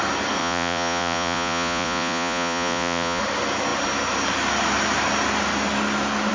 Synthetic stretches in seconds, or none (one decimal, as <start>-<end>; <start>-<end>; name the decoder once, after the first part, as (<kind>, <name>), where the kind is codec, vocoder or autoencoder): 0.4-3.2 (vocoder, Vocos)

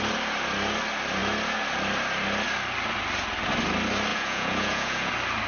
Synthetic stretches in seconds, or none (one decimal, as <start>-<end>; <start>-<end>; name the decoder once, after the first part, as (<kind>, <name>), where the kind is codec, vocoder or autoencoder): 4.1-5.1 (vocoder, Vocos)

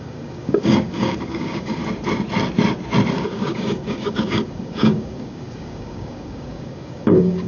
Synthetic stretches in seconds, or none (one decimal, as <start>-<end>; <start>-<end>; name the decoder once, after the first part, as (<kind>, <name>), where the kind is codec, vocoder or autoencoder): 0.0-1.8 (codec, DAC); 3.1-7.5

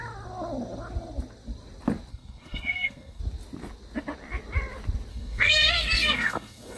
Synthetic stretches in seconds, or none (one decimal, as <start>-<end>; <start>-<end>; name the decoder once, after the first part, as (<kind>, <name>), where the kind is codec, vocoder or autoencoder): 2.1-3.2 (codec, SNAC); 5.1-6.8

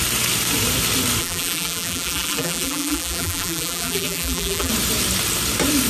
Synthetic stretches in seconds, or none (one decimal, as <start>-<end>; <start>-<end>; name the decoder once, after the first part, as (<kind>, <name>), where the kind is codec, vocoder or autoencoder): 1.2-4.7 (vocoder, BigVGAN v2)

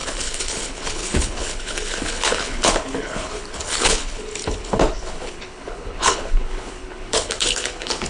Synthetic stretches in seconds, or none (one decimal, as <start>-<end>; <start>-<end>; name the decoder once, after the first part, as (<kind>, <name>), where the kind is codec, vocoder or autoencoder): 0.0-8.1 (codec, HILCodec)

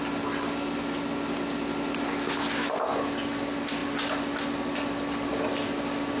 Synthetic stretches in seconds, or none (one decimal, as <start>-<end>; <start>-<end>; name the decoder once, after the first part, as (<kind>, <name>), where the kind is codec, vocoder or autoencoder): none